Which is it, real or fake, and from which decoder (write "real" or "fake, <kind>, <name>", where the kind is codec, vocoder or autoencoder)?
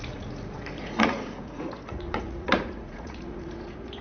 fake, vocoder, Vocos